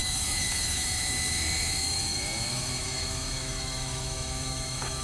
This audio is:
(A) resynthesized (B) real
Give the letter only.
A